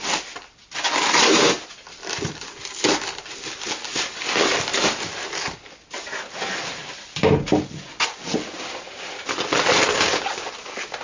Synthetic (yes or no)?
no